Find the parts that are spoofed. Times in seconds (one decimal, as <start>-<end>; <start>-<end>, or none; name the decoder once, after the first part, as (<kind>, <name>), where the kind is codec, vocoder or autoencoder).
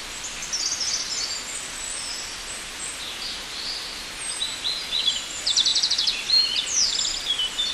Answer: 0.0-0.4 (vocoder, BigVGAN v2); 5.0-7.7